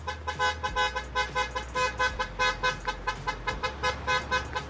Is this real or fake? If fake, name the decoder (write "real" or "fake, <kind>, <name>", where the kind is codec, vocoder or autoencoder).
real